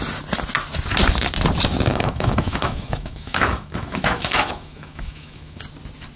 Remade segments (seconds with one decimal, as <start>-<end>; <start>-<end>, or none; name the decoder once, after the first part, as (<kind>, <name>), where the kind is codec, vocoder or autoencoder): 1.9-5.6 (autoencoder, DAC-VAE)